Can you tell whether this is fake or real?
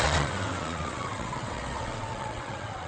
fake